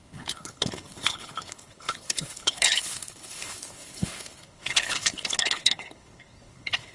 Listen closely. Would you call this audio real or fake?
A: fake